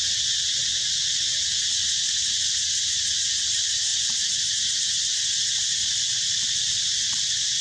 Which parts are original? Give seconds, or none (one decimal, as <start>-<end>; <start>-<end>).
0.0-7.6